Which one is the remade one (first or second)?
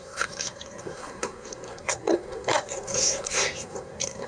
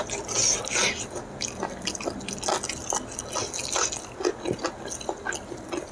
first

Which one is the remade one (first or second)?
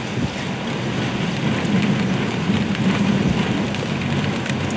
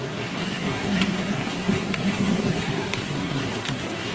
second